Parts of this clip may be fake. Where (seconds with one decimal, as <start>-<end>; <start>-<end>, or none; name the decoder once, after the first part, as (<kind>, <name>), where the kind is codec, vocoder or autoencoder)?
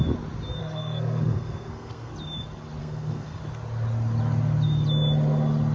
0.6-2.1 (codec, SNAC); 2.8-3.4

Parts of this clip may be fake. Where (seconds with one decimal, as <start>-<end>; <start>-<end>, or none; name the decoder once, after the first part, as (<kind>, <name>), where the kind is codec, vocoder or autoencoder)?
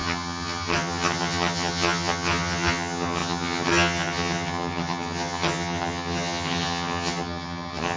0.0-8.0 (vocoder, HiFi-GAN)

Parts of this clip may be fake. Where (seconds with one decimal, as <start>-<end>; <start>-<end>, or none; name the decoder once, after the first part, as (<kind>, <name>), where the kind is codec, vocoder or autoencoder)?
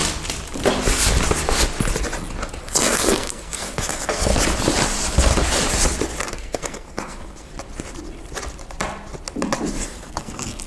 2.6-4.3 (codec, SNAC); 6.2-7.5; 9.7-10.7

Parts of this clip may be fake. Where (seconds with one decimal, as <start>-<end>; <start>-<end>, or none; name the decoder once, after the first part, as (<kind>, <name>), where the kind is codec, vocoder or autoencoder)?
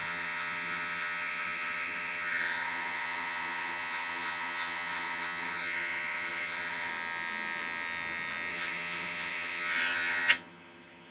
0.0-6.9 (vocoder, HiFi-GAN); 8.5-11.1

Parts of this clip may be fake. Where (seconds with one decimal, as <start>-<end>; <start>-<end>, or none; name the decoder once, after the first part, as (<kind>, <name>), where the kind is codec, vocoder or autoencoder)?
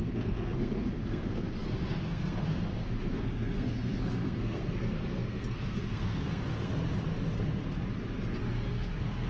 0.0-6.7 (codec, SNAC); 8.7-9.3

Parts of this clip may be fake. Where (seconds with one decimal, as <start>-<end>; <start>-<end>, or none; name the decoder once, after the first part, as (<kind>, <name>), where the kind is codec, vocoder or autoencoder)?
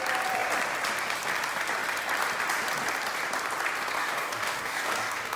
4.0-5.4 (codec, DAC)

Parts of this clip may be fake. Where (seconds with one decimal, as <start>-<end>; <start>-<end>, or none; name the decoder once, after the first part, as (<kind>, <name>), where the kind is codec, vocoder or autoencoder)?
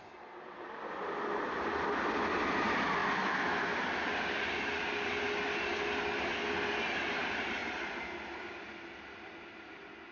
none